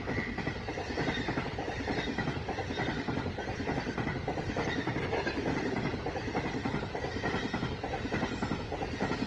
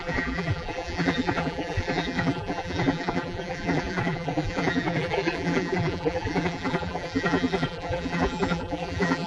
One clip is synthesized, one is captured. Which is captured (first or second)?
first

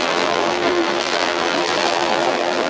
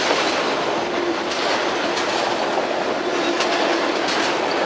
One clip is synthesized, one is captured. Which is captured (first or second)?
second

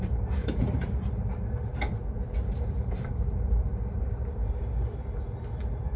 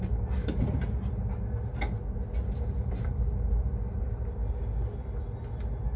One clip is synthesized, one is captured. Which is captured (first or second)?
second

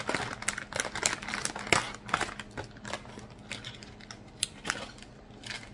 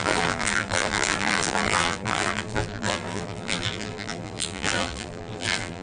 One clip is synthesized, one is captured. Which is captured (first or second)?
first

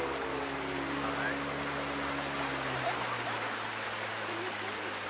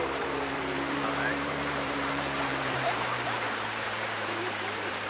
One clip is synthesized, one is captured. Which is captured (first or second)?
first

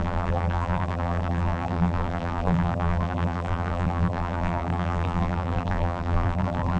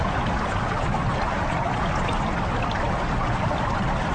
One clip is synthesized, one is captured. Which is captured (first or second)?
second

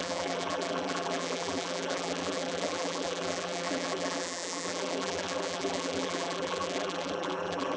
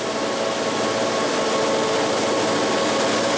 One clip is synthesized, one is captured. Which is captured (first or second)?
second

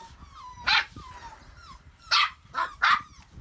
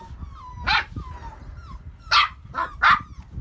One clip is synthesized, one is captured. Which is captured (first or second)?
second